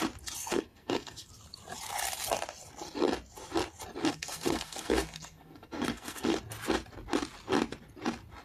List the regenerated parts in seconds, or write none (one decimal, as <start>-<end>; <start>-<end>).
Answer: 0.4-1.3; 4.0-6.4